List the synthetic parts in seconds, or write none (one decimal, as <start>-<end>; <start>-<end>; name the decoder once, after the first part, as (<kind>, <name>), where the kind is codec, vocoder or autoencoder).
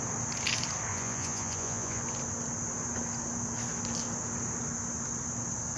0.9-2.0 (vocoder, Vocos)